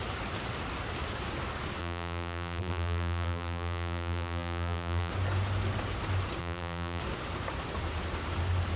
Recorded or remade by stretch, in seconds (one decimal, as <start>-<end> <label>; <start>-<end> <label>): 0.0-1.8 recorded; 1.8-5.1 remade; 5.1-6.4 recorded; 6.4-7.0 remade; 7.0-8.8 recorded

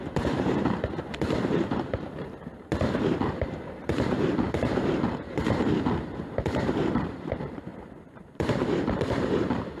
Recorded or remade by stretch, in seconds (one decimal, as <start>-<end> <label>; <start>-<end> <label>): 0.0-9.8 remade

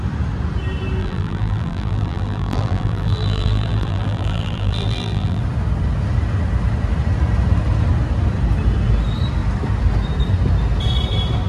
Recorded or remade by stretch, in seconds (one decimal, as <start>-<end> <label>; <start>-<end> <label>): 0.0-1.0 recorded; 1.0-5.4 remade; 5.4-11.5 recorded

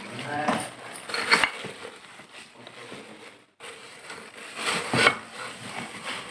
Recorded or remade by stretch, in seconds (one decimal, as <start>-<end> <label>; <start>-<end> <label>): 0.0-6.3 recorded

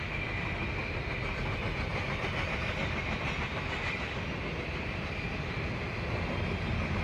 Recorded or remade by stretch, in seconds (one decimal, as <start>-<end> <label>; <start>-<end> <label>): 0.0-7.0 recorded

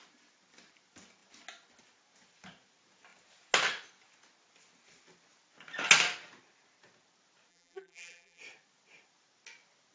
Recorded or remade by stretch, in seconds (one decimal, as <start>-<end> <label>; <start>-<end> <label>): 0.0-7.5 recorded; 7.5-8.4 remade; 8.4-9.9 recorded

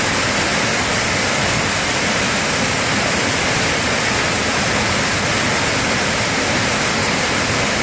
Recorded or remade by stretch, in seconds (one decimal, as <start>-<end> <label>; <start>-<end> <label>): 0.0-0.5 recorded; 0.5-3.4 remade; 3.4-7.8 recorded